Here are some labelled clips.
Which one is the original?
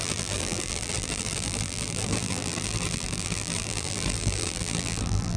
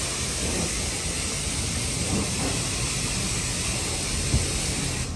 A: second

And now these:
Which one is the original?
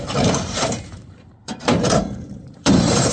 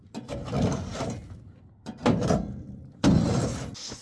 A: second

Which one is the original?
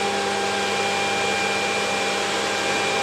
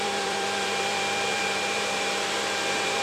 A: first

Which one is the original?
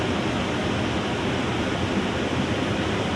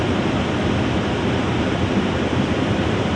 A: first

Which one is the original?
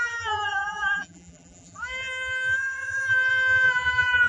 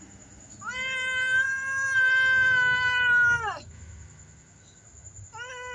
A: second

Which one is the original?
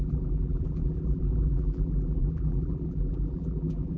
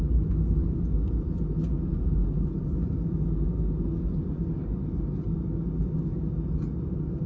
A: second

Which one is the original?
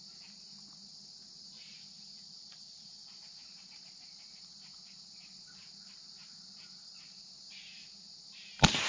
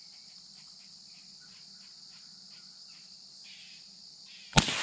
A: second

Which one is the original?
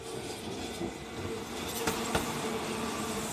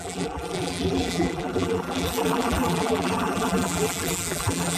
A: first